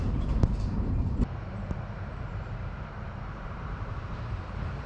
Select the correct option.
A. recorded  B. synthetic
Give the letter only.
B